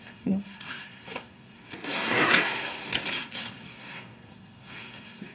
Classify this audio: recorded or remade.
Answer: remade